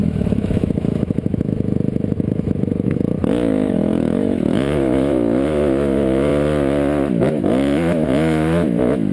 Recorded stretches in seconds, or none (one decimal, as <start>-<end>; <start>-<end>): 6.3-7.2